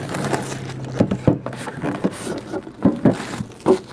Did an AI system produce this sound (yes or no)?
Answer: no